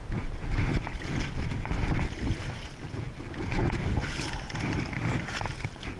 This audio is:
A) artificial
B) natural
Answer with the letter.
B